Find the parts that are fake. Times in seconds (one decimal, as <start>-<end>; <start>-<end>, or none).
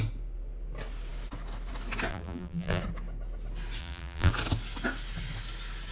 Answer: 2.1-2.8; 3.8-4.3